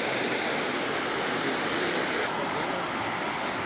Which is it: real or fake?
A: real